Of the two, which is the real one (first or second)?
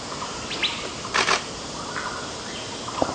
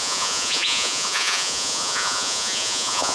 first